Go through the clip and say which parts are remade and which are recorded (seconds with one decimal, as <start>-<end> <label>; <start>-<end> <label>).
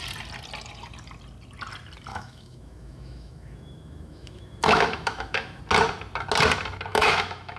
0.0-2.1 recorded; 2.1-5.6 remade; 5.6-6.9 recorded; 6.9-7.6 remade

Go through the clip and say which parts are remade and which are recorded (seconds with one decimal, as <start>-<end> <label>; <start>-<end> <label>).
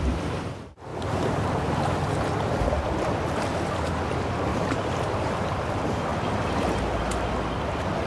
0.0-0.9 recorded; 0.9-2.0 remade; 2.0-4.5 recorded; 4.5-5.3 remade; 5.3-8.1 recorded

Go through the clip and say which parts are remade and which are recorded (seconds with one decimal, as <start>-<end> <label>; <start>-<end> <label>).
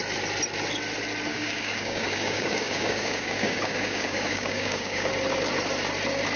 0.0-1.3 recorded; 1.3-5.1 remade; 5.1-6.4 recorded